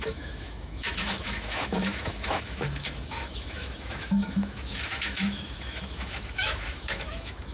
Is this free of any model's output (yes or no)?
no